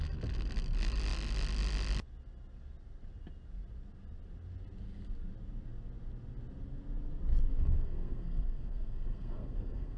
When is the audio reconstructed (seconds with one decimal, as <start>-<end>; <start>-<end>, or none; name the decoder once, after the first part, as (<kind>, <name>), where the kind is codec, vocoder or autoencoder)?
7.5-10.0 (codec, SNAC)